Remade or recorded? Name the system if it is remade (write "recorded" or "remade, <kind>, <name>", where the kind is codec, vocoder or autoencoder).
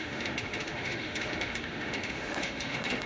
remade, autoencoder, DAC-VAE